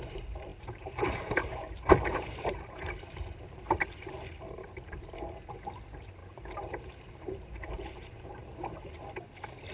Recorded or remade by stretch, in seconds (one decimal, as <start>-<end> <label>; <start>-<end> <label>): 0.0-0.5 recorded; 0.5-5.6 remade; 5.6-6.2 recorded; 6.2-8.9 remade; 8.9-9.7 recorded